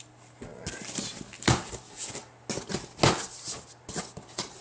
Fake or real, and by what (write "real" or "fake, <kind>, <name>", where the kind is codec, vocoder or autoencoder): real